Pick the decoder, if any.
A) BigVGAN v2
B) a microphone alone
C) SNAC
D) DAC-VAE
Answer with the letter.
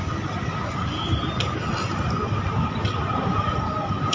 B